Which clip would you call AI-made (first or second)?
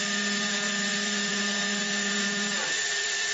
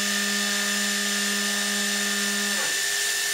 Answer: first